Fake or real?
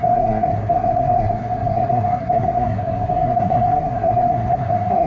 fake